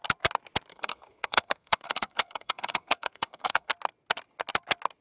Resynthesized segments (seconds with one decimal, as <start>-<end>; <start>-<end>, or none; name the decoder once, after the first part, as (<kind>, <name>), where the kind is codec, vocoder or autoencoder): 0.7-3.7 (codec, SNAC)